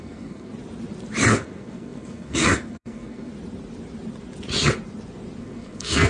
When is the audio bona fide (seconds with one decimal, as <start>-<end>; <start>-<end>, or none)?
0.5-1.3; 3.3-5.4